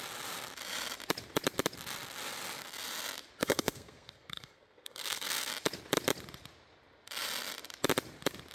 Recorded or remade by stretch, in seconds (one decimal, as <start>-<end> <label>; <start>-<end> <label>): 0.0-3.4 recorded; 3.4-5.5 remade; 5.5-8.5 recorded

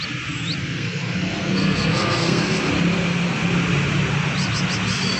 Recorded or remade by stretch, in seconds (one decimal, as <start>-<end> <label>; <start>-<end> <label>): 0.0-0.6 recorded; 0.6-2.7 remade; 2.7-5.2 recorded

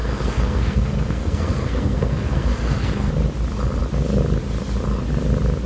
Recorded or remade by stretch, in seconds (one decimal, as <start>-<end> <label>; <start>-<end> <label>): 0.0-3.1 remade; 3.1-5.7 recorded

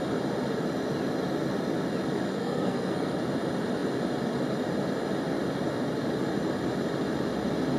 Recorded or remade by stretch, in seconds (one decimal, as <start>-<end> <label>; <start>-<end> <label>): 0.0-2.4 recorded; 2.4-3.1 remade; 3.1-7.8 recorded

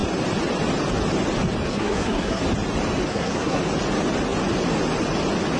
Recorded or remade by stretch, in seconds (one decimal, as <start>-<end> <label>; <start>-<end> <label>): 0.0-1.7 recorded; 1.7-2.4 remade; 2.4-3.1 recorded; 3.1-3.6 remade; 3.6-5.6 recorded